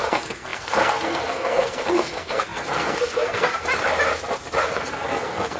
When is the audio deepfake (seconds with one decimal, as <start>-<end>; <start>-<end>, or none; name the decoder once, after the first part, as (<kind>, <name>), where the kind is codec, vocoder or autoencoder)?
0.0-3.7 (codec, SNAC); 4.6-5.6